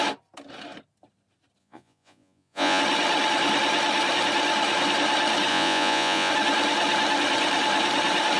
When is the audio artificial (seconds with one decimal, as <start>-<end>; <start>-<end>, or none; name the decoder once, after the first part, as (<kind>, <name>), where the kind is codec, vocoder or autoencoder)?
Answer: 1.6-2.8 (vocoder, Vocos); 5.5-6.3